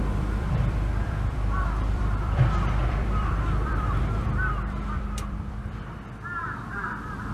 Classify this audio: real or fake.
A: fake